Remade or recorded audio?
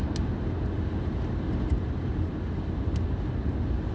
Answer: recorded